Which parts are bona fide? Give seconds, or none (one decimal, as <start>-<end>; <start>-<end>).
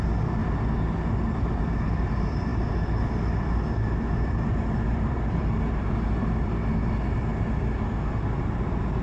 0.4-1.3; 7.3-9.0